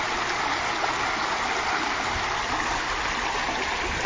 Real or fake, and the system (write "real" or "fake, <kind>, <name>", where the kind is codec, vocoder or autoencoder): real